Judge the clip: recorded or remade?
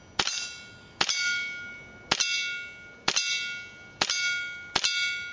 recorded